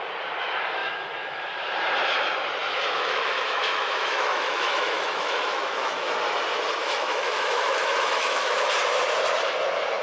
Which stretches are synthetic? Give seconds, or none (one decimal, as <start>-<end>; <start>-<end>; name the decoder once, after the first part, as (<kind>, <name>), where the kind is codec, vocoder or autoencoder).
0.8-1.4 (autoencoder, DAC-VAE); 2.6-6.1; 6.8-8.7